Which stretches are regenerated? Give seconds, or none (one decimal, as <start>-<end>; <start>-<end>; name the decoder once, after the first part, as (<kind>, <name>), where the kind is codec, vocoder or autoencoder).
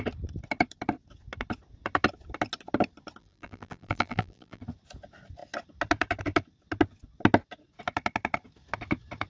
3.2-4.6 (vocoder, BigVGAN v2)